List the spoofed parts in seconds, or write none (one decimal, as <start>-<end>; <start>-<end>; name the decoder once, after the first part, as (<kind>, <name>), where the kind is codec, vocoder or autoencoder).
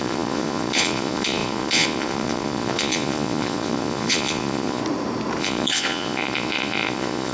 0.0-4.8 (vocoder, Vocos); 5.4-7.3